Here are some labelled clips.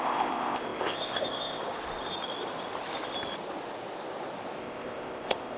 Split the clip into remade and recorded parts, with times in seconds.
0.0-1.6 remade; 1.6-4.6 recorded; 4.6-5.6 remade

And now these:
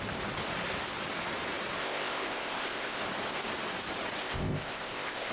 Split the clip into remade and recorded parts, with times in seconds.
0.0-1.8 recorded; 1.8-3.0 remade; 3.0-4.2 recorded; 4.2-5.3 remade

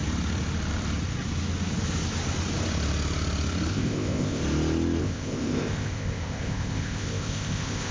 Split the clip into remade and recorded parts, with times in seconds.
0.0-3.7 recorded; 3.7-4.4 remade; 4.4-5.0 recorded; 5.0-7.9 remade

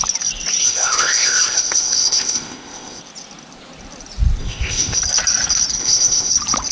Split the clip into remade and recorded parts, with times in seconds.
0.0-0.6 recorded; 0.6-3.0 remade; 3.0-4.4 recorded; 4.4-5.0 remade; 5.0-5.8 recorded; 5.8-6.3 remade; 6.3-6.7 recorded

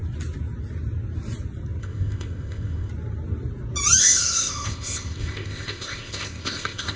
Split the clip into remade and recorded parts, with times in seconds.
0.0-1.8 recorded; 1.8-2.9 remade; 2.9-4.0 recorded; 4.0-7.0 remade